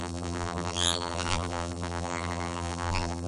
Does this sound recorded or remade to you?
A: remade